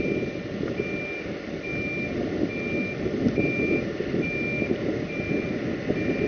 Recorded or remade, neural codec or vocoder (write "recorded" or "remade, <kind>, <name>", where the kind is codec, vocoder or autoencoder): recorded